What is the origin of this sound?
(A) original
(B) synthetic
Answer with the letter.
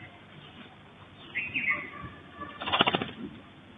A